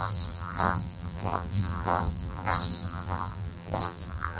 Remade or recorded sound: remade